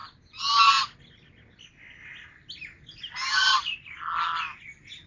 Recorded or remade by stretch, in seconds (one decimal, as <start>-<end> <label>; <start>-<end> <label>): 0.0-5.1 recorded